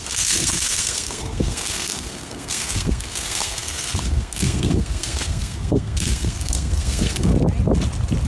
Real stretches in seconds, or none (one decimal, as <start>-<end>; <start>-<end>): 7.3-8.3